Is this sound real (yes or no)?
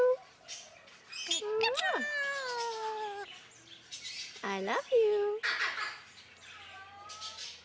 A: yes